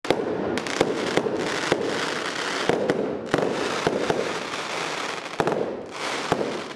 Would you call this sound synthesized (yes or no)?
no